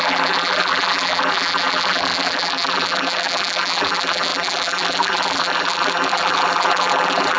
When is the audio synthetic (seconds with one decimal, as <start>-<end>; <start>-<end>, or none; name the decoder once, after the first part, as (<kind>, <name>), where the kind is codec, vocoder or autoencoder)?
0.0-7.4 (vocoder, BigVGAN v2)